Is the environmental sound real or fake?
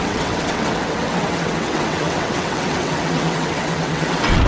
fake